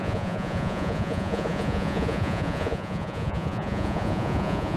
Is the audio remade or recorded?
remade